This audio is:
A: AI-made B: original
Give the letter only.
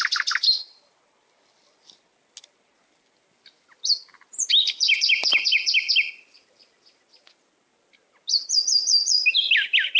B